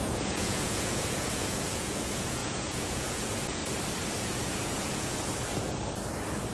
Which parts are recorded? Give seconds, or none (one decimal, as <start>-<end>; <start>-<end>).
3.6-4.2; 5.5-6.5